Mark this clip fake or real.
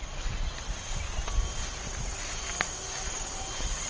real